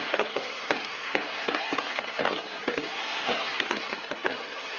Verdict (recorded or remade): remade